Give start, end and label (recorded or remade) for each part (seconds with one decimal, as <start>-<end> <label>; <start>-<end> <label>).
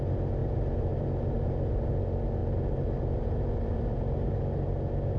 0.0-0.4 recorded; 0.4-1.9 remade; 1.9-2.4 recorded; 2.4-4.4 remade; 4.4-5.2 recorded